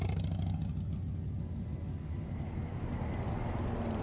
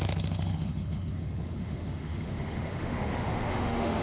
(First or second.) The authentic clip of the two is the first